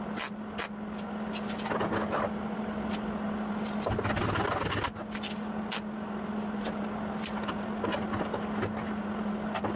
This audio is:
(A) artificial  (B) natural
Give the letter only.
B